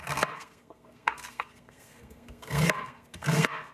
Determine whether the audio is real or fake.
fake